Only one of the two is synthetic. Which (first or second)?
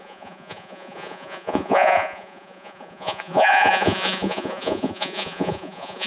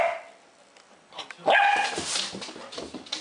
first